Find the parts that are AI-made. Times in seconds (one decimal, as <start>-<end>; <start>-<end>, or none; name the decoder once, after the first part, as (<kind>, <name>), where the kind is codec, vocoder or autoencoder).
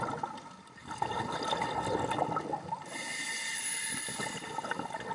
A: 0.8-1.6 (vocoder, BigVGAN v2)